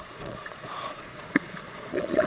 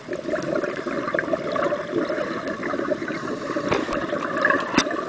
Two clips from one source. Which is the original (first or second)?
second